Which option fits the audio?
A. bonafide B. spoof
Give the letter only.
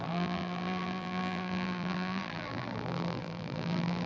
B